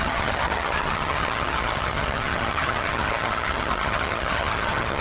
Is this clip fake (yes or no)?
yes